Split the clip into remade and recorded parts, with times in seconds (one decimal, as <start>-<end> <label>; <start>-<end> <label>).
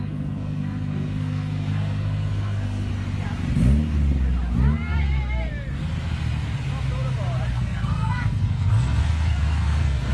0.0-2.9 remade; 2.9-7.5 recorded; 7.5-10.1 remade